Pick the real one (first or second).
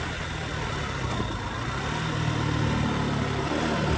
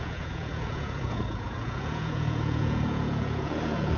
first